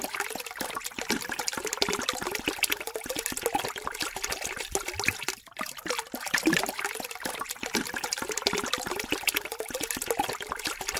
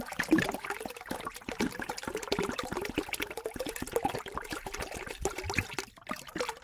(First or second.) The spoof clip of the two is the second